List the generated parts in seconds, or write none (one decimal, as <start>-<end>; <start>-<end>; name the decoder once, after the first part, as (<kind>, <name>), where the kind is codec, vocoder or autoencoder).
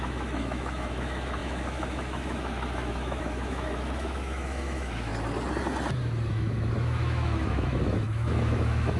0.0-5.1 (autoencoder, DAC-VAE); 6.3-9.0